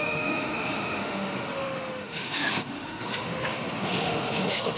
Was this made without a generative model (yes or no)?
no